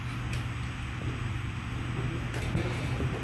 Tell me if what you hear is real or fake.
real